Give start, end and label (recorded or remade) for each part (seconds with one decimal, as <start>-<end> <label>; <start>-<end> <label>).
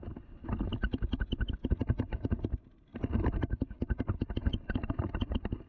0.0-5.7 recorded